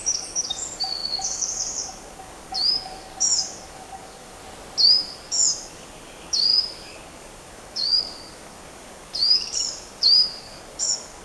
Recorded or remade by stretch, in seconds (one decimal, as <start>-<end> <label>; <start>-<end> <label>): 0.0-4.4 remade; 4.4-4.9 recorded; 4.9-11.2 remade